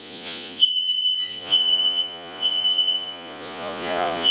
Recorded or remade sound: remade